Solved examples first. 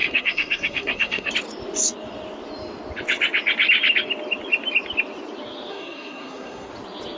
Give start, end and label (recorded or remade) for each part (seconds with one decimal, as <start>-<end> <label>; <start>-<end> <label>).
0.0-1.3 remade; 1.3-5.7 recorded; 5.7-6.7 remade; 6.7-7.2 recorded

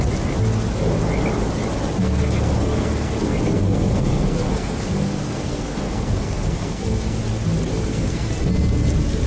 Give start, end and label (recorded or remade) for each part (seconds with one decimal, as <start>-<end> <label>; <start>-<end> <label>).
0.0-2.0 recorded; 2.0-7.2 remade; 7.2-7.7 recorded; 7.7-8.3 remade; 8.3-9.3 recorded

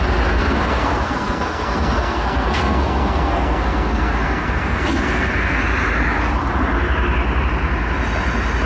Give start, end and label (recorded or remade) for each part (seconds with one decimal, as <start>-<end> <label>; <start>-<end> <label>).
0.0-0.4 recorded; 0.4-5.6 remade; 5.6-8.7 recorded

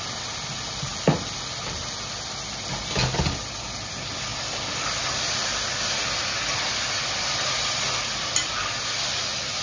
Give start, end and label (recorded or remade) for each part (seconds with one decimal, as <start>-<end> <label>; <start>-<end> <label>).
0.0-9.6 recorded